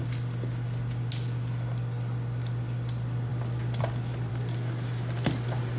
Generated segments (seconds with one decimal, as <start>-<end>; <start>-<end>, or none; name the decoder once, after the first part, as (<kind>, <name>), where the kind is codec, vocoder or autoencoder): none